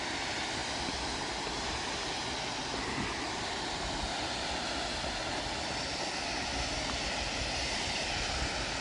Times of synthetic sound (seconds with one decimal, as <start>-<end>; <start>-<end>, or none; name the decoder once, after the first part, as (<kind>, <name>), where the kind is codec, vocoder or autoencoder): none